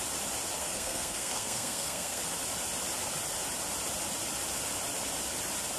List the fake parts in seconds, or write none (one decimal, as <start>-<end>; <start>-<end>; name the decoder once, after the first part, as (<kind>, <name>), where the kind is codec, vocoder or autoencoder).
0.6-2.2 (codec, SNAC)